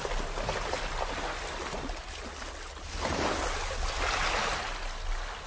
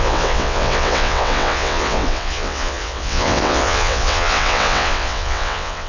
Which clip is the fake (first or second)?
second